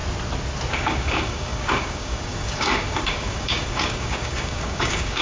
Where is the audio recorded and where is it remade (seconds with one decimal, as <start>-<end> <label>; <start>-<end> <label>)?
0.0-0.7 recorded; 0.7-5.2 remade